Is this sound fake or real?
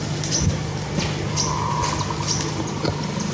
real